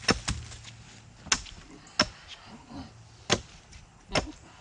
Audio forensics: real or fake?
real